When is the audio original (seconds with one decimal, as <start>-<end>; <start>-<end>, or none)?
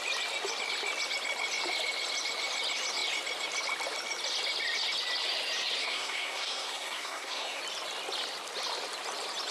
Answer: 0.0-5.8; 7.6-9.5